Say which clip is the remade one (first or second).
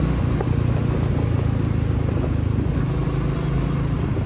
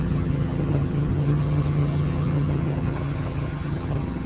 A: second